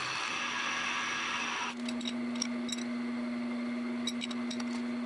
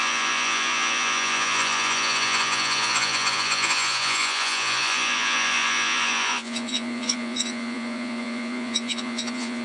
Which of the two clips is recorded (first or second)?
first